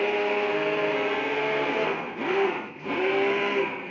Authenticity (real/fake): fake